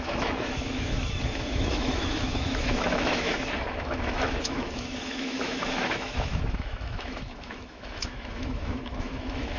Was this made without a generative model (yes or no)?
no